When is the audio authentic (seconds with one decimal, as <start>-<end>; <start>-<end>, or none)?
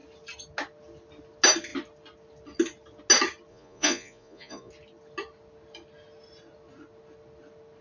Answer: 0.0-3.5; 4.7-7.8